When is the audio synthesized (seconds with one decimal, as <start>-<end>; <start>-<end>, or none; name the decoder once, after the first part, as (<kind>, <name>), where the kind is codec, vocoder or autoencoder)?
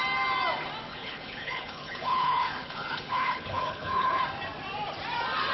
0.9-4.2 (codec, HILCodec)